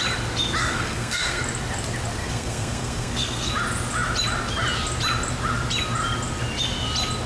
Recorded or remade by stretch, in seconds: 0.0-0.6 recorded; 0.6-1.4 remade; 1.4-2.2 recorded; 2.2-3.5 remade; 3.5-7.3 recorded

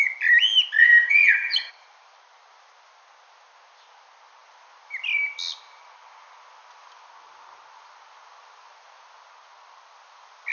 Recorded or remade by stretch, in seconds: 0.0-0.8 recorded; 0.8-1.7 remade; 1.7-10.5 recorded

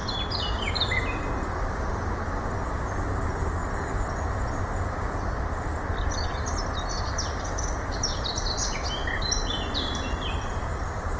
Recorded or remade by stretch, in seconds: 0.0-11.2 recorded

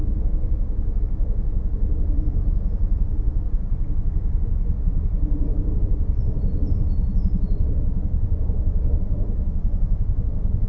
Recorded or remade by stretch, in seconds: 0.0-2.4 recorded; 2.4-5.8 remade; 5.8-10.7 recorded